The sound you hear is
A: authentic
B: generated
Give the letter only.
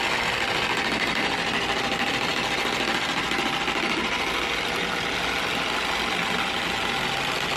A